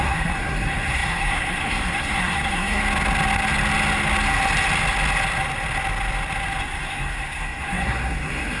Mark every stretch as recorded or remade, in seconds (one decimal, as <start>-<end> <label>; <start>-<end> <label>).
0.0-2.8 remade; 2.8-6.6 recorded; 6.6-8.6 remade